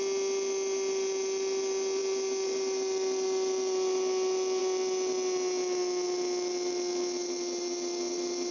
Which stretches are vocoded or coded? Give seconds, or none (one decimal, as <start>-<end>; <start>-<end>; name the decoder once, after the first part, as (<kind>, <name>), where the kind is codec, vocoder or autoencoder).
none